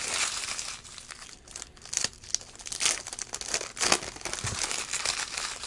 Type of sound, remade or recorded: recorded